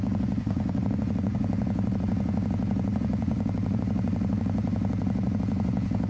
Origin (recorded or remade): remade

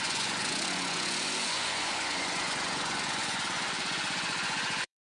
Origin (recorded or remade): remade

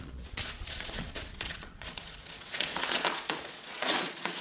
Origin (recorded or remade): remade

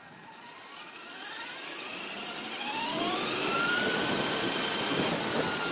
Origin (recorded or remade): recorded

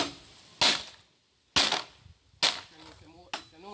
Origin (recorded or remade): recorded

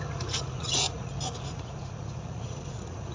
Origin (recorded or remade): remade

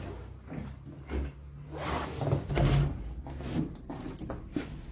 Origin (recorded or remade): recorded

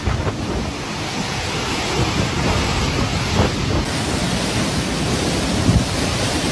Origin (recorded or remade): recorded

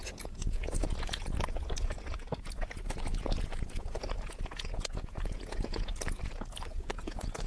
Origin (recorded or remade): remade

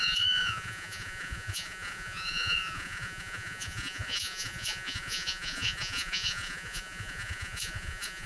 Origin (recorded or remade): remade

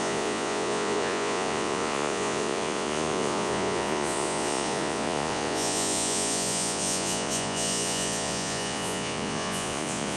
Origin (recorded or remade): remade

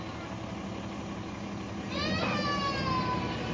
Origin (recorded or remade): recorded